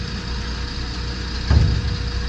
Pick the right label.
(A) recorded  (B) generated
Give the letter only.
A